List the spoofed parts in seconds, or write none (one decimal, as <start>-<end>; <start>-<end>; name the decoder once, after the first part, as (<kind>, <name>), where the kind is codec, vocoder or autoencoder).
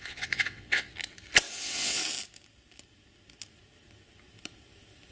0.0-0.9 (vocoder, WaveNeXt); 1.5-2.0